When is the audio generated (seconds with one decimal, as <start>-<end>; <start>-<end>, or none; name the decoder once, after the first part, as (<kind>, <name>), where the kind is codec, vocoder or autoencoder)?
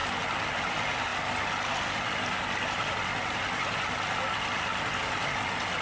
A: none